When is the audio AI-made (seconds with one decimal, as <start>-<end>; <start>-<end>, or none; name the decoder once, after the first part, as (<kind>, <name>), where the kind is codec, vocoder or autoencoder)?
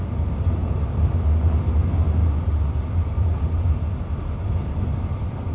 0.6-1.3 (vocoder, BigVGAN v2); 2.2-3.9